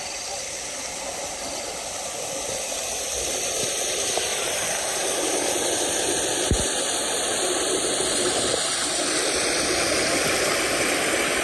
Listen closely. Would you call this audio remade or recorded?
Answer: remade